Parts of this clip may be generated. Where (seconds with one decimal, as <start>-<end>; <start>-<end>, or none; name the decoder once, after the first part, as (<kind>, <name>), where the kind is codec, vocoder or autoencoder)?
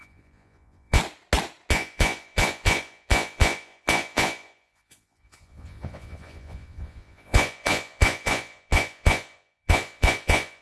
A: 0.0-1.0 (vocoder, Vocos); 1.7-10.6